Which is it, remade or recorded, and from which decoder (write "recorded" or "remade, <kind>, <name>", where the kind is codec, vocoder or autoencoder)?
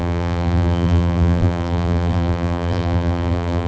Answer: remade, vocoder, BigVGAN v2